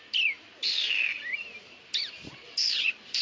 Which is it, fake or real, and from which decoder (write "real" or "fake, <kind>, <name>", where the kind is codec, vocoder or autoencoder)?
fake, vocoder, BigVGAN v2